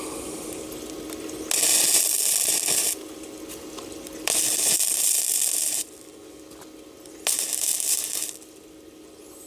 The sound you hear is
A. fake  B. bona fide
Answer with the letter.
B